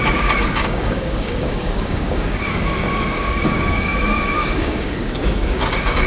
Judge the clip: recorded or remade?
remade